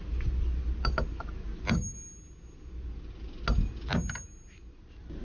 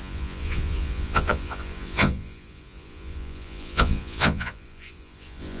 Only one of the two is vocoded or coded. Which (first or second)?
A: second